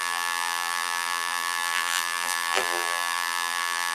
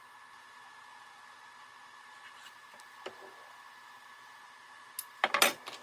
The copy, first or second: first